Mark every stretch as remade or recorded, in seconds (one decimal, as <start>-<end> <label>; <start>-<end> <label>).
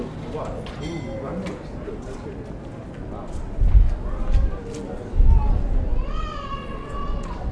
0.0-5.9 recorded; 5.9-7.5 remade